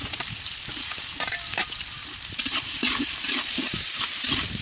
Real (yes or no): no